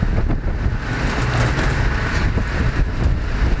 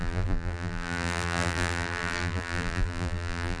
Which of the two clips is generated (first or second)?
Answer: second